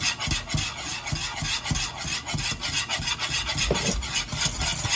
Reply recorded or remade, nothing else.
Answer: recorded